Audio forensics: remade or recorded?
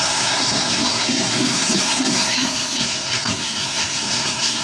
remade